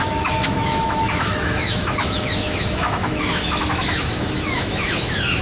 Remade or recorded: remade